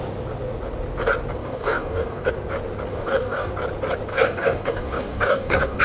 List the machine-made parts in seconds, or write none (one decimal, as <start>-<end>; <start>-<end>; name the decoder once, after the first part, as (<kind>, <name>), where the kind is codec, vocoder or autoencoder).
1.4-2.3 (codec, DAC); 2.9-3.5; 4.1-5.8